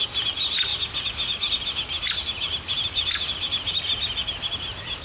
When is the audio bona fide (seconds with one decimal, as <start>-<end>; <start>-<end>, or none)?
0.0-5.0